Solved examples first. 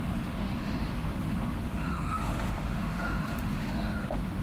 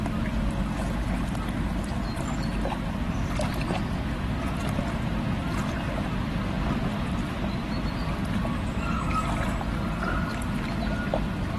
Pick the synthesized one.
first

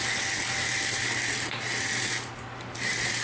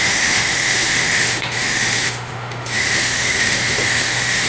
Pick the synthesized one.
second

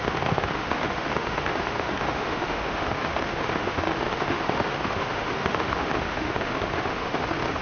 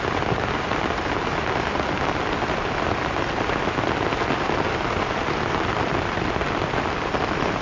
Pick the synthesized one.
first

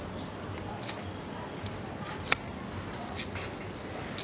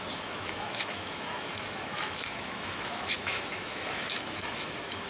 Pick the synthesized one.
second